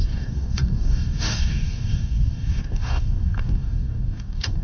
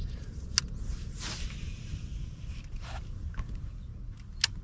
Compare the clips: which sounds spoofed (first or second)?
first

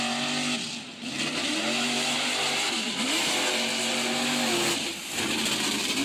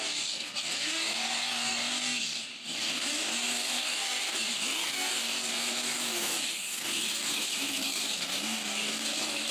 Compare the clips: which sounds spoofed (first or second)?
second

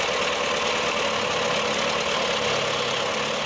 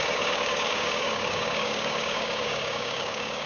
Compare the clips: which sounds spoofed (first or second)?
second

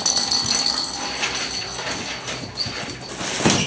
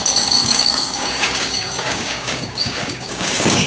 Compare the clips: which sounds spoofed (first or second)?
second